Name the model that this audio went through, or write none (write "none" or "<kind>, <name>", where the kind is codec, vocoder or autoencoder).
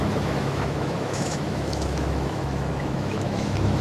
autoencoder, DAC-VAE